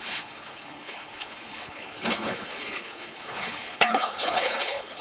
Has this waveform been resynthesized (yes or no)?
yes